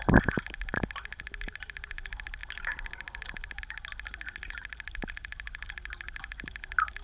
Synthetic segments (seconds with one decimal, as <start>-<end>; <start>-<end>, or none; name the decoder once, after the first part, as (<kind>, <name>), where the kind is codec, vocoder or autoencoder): none